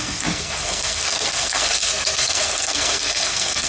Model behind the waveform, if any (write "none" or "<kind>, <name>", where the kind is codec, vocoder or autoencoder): codec, SNAC